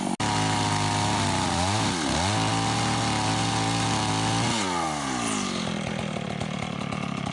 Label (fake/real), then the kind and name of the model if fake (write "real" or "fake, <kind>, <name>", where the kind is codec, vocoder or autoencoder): real